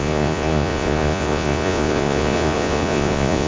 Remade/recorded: remade